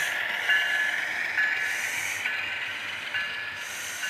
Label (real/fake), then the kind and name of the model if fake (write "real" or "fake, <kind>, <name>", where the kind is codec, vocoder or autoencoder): real